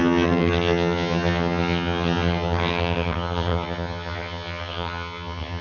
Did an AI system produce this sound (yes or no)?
yes